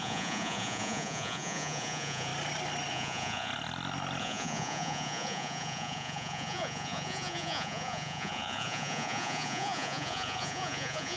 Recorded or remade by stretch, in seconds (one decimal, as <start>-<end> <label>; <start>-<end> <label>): 0.0-2.3 remade; 2.3-2.9 recorded; 2.9-3.5 remade; 3.5-4.2 recorded; 4.2-11.2 remade